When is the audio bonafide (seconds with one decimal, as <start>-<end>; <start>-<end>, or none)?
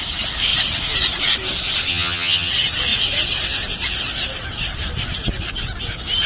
0.0-1.9; 2.5-6.3